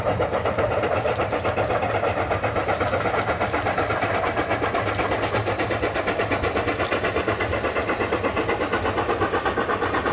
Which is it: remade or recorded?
recorded